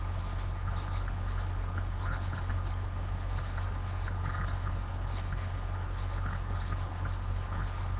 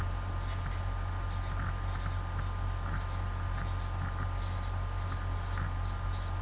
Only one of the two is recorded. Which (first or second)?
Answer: second